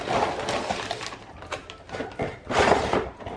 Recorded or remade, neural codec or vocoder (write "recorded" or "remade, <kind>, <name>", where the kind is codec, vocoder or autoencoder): recorded